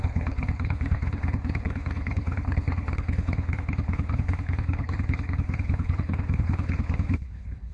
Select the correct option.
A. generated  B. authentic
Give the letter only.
A